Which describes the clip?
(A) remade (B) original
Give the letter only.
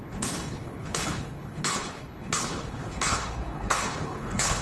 A